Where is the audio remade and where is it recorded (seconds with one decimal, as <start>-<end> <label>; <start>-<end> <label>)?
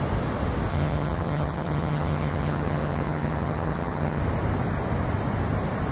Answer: 0.0-0.7 recorded; 0.7-4.2 remade; 4.2-5.9 recorded